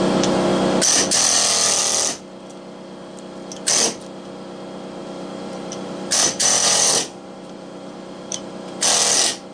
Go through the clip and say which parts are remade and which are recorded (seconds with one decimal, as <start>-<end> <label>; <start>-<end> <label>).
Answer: 0.0-5.0 recorded; 5.0-8.8 remade; 8.8-9.5 recorded